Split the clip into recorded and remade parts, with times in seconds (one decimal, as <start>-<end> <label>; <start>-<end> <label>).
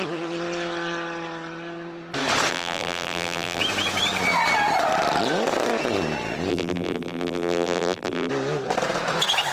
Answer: 0.0-2.5 recorded; 2.5-3.6 remade; 3.6-6.5 recorded; 6.5-8.3 remade; 8.3-9.5 recorded